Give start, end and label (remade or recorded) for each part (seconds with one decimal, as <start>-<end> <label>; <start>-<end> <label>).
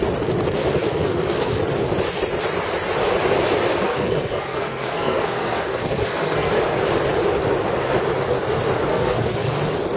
0.0-0.6 recorded; 0.6-1.6 remade; 1.6-3.7 recorded; 3.7-6.5 remade; 6.5-8.9 recorded; 8.9-9.5 remade; 9.5-10.0 recorded